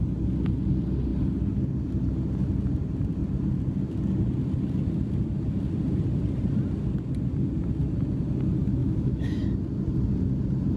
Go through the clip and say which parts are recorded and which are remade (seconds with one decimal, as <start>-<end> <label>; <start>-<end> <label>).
0.0-8.8 recorded; 8.8-9.4 remade; 9.4-10.8 recorded